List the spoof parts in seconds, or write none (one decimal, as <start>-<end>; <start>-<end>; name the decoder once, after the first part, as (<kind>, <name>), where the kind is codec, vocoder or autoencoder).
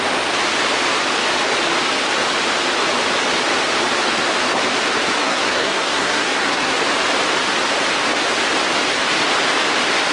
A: 5.2-6.8 (codec, SNAC)